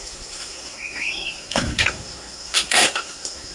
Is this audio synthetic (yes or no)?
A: yes